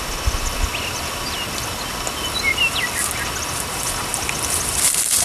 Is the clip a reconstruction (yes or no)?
no